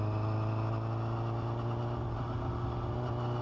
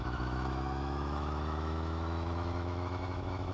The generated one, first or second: second